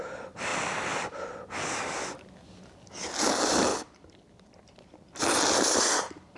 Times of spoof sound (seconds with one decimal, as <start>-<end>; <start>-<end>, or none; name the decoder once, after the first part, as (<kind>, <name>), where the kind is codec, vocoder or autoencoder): 3.7-5.2 (vocoder, BigVGAN v2)